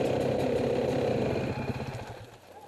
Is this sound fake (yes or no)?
no